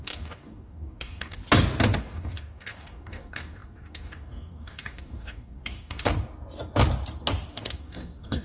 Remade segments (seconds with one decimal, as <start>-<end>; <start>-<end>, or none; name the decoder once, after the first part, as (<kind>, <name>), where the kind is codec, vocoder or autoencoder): 0.0-1.4 (codec, DAC); 2.0-6.1; 7.5-8.4